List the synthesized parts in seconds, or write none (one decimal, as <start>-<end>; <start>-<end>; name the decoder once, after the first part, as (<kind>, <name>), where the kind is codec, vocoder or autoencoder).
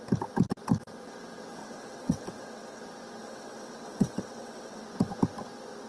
1.6-2.8 (vocoder, WaveNeXt); 3.2-4.8